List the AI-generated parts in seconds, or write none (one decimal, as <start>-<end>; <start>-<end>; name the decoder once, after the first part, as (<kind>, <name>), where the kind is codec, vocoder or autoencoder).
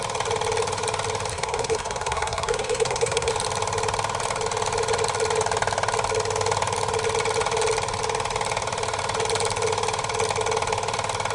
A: 1.3-3.3 (codec, SNAC)